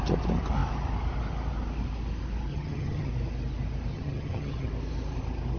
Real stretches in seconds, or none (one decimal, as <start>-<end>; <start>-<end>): 0.0-2.5; 3.1-3.9; 4.7-5.6